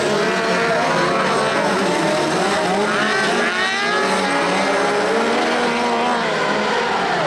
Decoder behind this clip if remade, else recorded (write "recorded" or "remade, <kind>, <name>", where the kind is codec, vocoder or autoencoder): recorded